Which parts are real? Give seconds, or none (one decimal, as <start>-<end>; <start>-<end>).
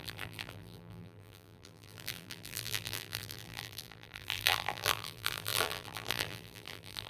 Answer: none